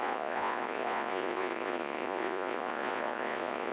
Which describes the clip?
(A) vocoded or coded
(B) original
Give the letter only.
A